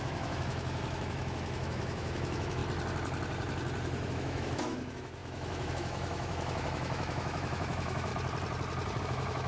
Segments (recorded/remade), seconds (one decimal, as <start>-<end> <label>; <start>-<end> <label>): 0.0-2.6 remade; 2.6-4.1 recorded; 4.1-8.1 remade; 8.1-9.0 recorded; 9.0-9.5 remade